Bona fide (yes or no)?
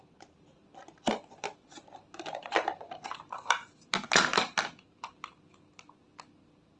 yes